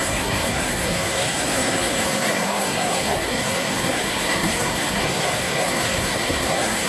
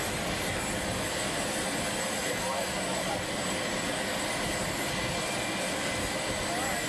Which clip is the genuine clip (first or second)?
second